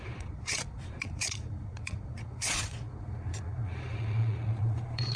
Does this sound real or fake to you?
fake